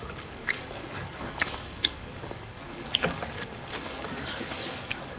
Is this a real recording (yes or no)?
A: no